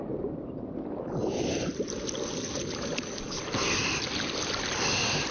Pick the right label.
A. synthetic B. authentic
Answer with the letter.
B